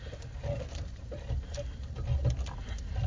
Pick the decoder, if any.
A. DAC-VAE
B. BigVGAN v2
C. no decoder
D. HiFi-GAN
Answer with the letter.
C